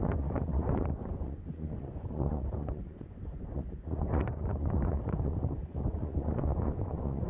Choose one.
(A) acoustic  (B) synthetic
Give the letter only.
B